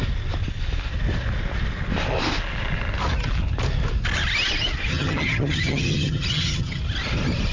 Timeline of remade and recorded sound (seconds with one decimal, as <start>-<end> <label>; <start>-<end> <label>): 0.0-4.9 recorded; 4.9-6.8 remade; 6.8-7.5 recorded